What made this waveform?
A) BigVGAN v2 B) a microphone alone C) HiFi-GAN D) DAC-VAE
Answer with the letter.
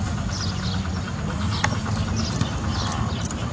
B